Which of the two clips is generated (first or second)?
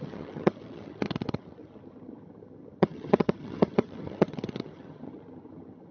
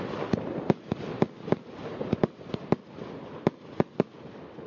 first